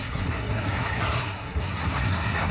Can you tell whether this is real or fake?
fake